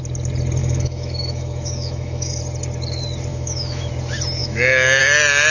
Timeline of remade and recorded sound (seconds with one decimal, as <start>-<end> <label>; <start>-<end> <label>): 0.0-0.6 recorded; 0.6-2.4 remade; 2.4-3.3 recorded; 3.3-3.9 remade; 3.9-4.4 recorded; 4.4-5.0 remade; 5.0-5.5 recorded